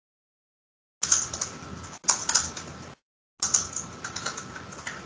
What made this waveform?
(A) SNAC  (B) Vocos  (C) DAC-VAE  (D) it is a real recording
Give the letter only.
D